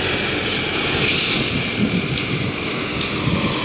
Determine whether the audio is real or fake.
real